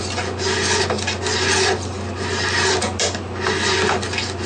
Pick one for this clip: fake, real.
real